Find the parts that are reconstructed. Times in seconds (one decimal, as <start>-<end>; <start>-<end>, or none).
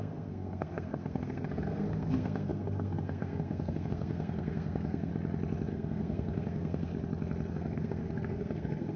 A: 0.0-5.1; 5.7-6.9; 7.5-9.0